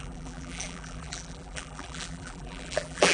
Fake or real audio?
fake